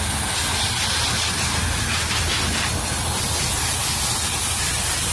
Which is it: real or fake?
real